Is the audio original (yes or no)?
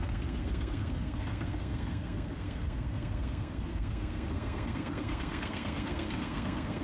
no